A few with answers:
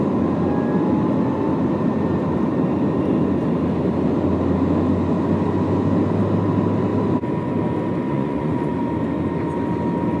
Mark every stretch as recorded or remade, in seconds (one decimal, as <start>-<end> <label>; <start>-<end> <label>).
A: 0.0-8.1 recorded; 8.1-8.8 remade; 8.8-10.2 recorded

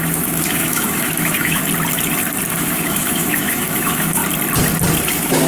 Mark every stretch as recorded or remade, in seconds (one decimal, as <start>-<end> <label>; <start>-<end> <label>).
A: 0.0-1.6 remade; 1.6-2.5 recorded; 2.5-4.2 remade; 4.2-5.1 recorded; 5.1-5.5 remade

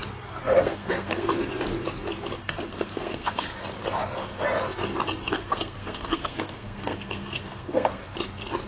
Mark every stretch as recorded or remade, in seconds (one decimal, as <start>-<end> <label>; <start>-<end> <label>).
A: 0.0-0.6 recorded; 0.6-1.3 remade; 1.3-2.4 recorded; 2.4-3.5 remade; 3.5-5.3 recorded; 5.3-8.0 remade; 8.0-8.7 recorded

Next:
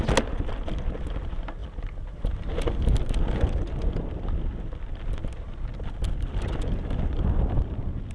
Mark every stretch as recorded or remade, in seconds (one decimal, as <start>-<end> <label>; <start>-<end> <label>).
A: 0.0-8.1 recorded